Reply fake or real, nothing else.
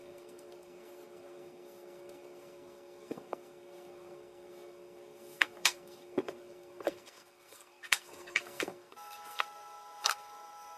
fake